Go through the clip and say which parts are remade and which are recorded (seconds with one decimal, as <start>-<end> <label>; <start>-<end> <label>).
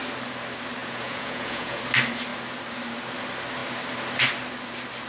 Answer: 0.0-0.8 recorded; 0.8-1.8 remade; 1.8-5.1 recorded